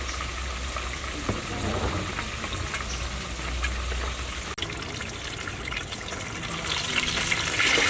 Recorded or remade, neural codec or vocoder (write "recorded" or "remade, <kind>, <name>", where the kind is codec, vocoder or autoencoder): recorded